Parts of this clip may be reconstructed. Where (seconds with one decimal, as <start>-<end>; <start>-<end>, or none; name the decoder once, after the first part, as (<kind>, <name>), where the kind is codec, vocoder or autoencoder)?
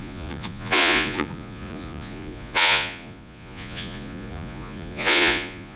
0.0-5.8 (vocoder, Vocos)